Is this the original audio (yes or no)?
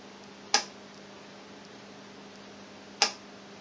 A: yes